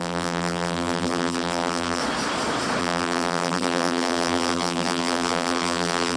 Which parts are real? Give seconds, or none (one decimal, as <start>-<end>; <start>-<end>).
2.0-2.8